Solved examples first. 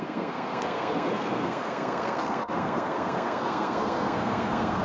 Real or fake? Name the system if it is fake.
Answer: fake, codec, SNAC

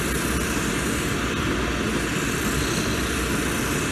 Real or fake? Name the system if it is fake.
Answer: real